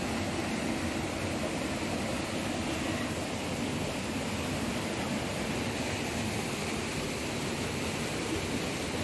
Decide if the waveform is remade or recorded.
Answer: recorded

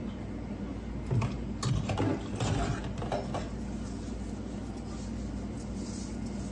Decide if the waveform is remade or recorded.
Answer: recorded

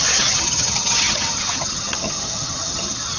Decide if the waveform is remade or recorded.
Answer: remade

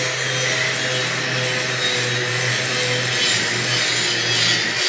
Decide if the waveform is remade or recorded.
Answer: recorded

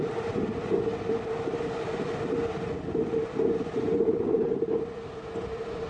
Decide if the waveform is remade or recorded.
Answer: recorded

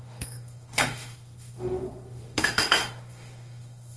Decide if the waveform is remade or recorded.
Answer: remade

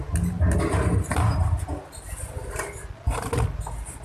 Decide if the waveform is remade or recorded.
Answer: recorded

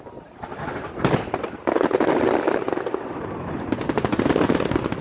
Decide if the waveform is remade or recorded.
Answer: remade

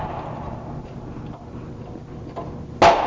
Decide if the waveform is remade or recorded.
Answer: recorded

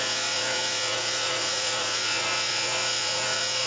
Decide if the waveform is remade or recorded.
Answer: remade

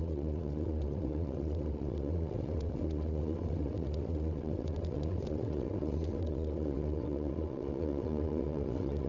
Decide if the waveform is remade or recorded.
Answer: remade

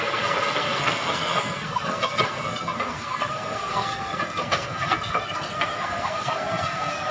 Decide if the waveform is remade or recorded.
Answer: remade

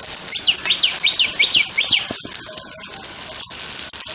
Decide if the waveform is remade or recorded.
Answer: recorded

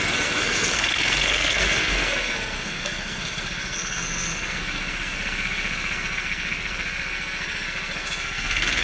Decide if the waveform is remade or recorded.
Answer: remade